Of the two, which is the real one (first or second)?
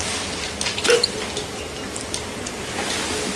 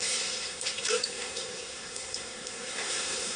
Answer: first